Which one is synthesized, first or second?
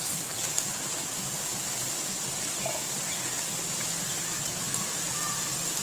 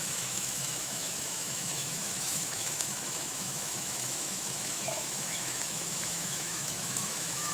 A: second